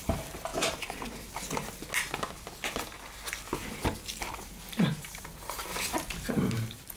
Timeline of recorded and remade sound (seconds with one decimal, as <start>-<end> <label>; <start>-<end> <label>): 0.0-0.5 remade; 0.5-4.2 recorded; 4.2-5.7 remade; 5.7-6.3 recorded; 6.3-7.0 remade